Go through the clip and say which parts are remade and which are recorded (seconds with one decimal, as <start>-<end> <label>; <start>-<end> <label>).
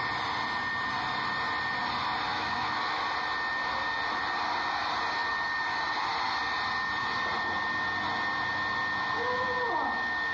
0.0-2.3 recorded; 2.3-3.0 remade; 3.0-10.3 recorded